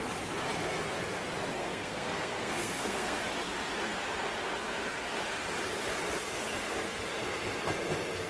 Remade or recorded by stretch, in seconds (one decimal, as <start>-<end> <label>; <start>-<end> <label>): 0.0-1.6 recorded; 1.6-3.2 remade; 3.2-8.3 recorded